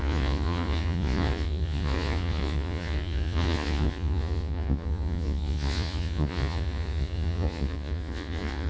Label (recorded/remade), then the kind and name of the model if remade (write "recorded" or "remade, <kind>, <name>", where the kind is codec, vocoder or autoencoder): remade, vocoder, Vocos